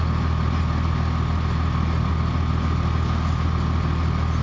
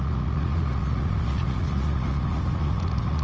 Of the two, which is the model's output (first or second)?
second